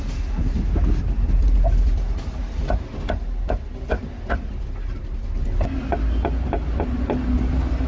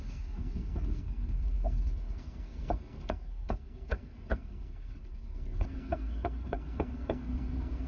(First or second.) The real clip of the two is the first